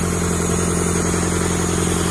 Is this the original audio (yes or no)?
yes